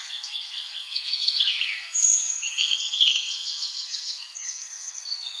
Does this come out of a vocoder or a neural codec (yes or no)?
yes